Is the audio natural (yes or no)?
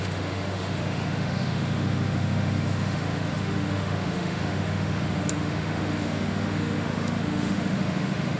no